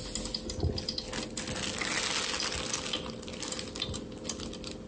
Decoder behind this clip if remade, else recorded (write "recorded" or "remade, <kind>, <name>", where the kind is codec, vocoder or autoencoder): recorded